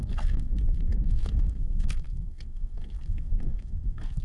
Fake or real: fake